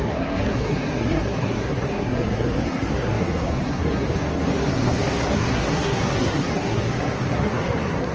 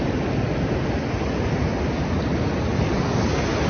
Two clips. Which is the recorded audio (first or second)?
second